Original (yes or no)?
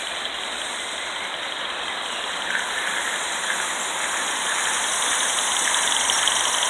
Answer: yes